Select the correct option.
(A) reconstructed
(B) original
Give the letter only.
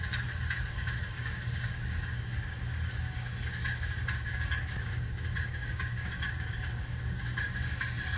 A